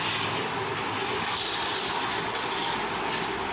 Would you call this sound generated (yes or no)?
yes